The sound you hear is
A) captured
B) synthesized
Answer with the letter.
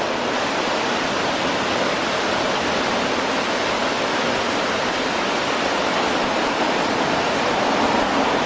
A